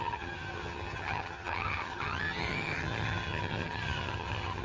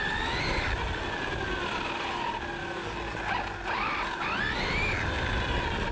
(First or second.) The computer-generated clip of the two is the first